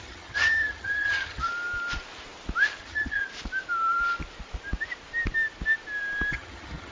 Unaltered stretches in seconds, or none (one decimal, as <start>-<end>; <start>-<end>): 1.5-2.8; 3.2-6.3